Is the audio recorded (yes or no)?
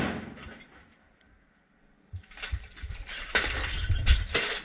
yes